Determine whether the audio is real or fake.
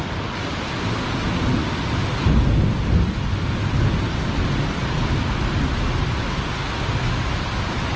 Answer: real